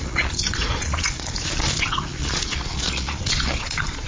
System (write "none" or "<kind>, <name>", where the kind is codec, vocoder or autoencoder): vocoder, Vocos